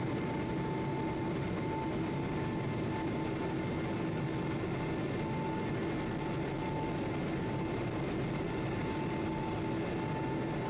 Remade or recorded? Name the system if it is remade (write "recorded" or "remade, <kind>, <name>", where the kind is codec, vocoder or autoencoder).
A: recorded